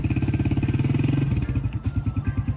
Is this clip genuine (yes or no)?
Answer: yes